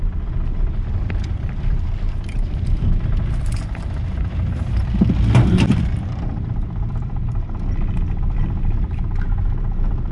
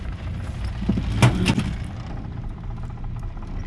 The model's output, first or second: first